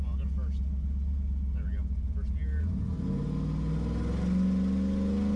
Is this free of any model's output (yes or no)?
yes